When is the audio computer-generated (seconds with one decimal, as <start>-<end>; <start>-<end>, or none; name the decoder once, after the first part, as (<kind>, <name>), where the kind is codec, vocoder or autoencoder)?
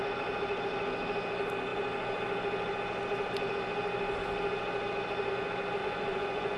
5.8-6.6 (vocoder, Vocos)